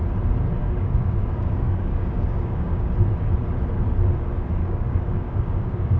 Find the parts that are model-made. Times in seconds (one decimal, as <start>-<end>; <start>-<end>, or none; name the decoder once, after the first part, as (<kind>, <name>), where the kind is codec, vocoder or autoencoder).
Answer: 0.6-2.9 (codec, DAC); 4.6-6.0